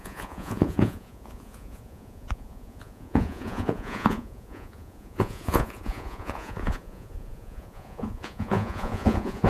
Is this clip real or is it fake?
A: fake